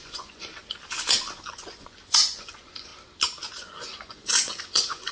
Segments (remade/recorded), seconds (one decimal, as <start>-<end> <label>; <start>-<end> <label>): 0.0-0.5 remade; 0.5-1.5 recorded; 1.5-2.9 remade; 2.9-3.5 recorded; 3.5-5.1 remade